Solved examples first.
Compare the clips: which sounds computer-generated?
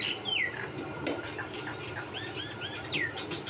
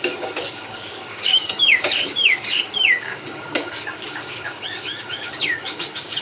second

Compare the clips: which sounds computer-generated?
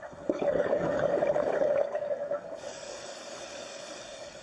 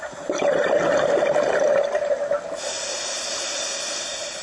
first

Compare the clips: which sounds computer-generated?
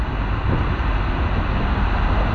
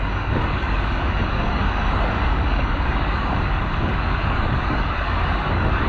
second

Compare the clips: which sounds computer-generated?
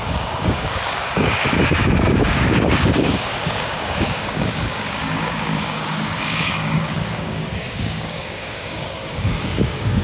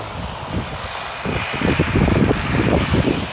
first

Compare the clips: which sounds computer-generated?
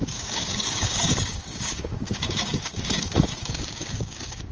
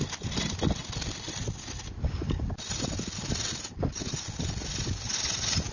first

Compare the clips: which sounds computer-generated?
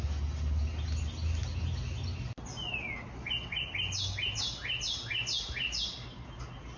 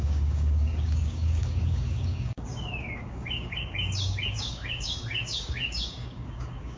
second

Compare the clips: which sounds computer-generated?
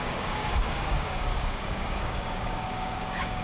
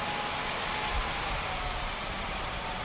first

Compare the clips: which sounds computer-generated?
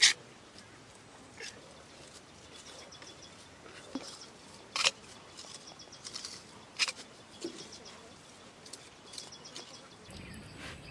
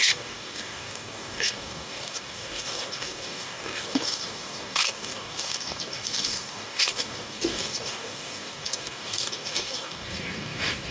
second